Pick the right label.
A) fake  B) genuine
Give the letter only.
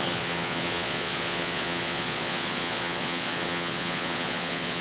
A